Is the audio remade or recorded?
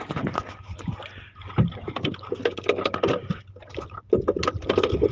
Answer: recorded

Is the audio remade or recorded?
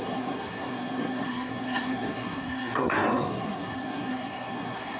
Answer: remade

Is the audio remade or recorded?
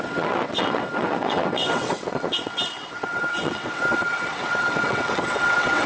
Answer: remade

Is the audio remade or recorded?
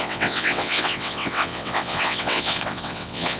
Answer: remade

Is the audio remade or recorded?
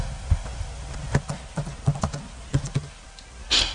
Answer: recorded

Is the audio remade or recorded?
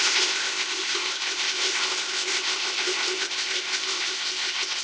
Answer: remade